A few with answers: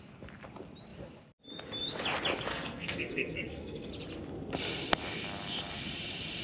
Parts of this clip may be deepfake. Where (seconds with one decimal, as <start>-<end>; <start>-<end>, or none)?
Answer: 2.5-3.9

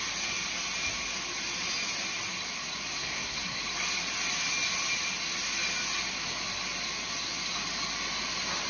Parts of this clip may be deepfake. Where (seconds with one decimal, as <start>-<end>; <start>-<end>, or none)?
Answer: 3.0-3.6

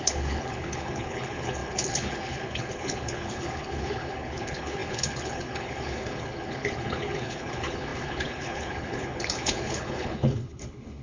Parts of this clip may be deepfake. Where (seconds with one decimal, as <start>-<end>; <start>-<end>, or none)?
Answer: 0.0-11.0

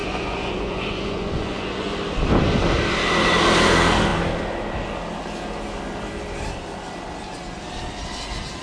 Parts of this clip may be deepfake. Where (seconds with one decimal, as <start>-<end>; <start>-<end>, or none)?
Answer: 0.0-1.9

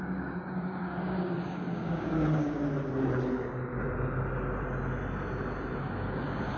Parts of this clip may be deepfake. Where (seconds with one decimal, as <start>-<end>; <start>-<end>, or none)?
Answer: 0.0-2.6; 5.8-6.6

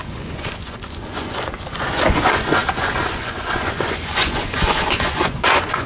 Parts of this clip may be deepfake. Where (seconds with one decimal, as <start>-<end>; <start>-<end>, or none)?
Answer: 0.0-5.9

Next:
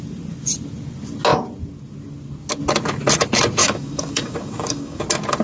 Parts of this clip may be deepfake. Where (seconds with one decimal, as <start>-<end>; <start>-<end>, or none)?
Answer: 3.6-5.0